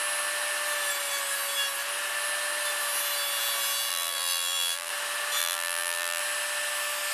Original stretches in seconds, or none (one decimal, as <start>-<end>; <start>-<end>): 0.0-3.9; 4.9-5.4; 6.2-7.1